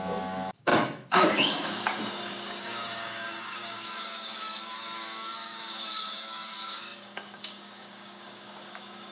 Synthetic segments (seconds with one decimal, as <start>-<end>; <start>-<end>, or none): 0.0-9.1